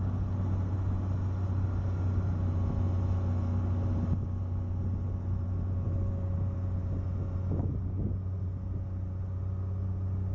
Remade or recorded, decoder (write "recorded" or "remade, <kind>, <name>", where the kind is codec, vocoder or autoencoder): recorded